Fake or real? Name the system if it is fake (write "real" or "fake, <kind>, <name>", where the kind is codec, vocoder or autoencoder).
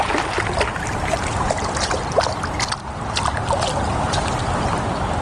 real